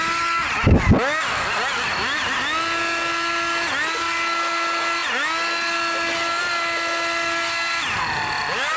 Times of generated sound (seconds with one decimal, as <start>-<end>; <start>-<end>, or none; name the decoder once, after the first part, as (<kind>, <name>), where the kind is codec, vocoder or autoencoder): none

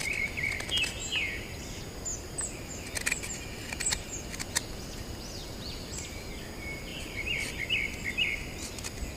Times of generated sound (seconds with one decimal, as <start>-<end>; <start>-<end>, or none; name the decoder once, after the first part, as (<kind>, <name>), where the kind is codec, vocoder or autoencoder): none